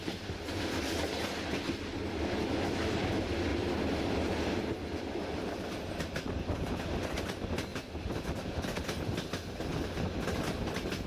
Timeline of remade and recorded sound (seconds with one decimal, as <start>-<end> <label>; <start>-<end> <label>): 0.0-3.5 recorded; 3.5-4.6 remade; 4.6-7.7 recorded; 7.7-8.3 remade; 8.3-11.1 recorded